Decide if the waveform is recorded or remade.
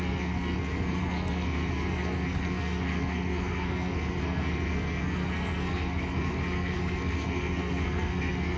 remade